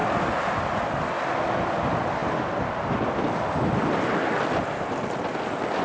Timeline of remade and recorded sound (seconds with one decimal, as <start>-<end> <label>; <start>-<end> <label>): 0.0-5.8 recorded